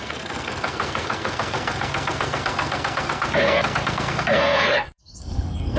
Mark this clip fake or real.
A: fake